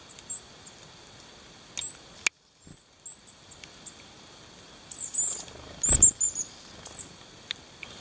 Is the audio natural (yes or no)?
yes